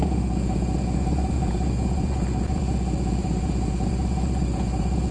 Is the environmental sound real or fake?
fake